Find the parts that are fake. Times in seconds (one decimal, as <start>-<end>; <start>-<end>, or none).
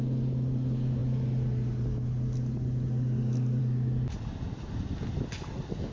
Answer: none